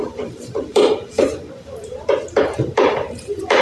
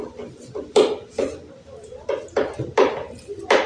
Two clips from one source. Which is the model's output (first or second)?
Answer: first